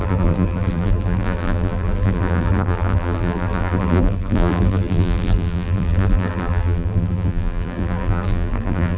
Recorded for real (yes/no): no